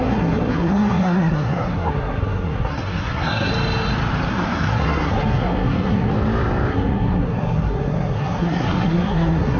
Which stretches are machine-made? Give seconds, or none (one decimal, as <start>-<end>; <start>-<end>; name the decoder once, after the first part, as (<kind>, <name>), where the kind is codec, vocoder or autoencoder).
0.0-3.5 (codec, SNAC); 4.3-6.1; 6.7-9.6